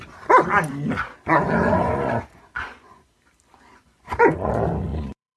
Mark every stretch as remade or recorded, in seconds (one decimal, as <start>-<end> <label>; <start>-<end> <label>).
0.0-1.7 recorded; 1.7-3.1 remade; 3.1-3.8 recorded; 3.8-4.5 remade; 4.5-4.9 recorded; 4.9-5.4 remade